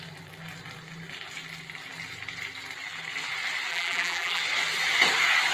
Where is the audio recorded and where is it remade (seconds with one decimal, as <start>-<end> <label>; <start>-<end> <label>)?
0.0-3.7 recorded; 3.7-4.4 remade; 4.4-5.5 recorded